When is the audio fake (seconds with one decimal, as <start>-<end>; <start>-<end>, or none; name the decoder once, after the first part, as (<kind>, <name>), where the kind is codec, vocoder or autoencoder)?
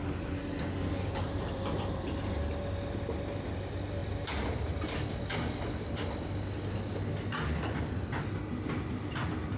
none